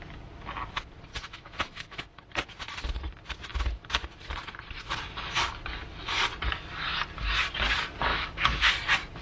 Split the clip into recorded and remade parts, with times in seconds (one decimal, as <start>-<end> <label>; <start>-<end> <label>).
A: 0.0-1.1 recorded; 1.1-2.0 remade; 2.0-8.1 recorded; 8.1-8.7 remade; 8.7-9.2 recorded